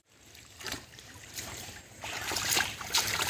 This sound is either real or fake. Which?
fake